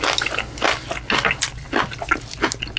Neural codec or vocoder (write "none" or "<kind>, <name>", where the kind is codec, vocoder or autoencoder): none